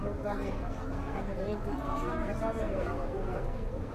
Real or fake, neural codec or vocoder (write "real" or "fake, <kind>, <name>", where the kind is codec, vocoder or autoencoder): fake, codec, SNAC